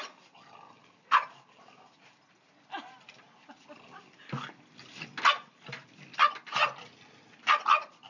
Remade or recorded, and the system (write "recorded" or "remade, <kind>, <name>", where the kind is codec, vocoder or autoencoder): recorded